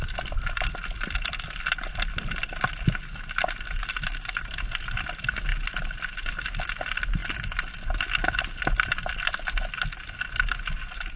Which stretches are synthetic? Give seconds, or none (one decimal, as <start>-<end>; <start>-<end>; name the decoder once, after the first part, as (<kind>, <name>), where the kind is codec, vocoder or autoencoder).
none